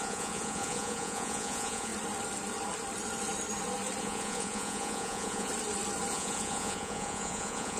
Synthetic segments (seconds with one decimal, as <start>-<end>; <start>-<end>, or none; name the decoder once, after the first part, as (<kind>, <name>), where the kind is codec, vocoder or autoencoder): 0.0-1.9 (vocoder, Vocos); 4.0-5.5; 6.1-7.8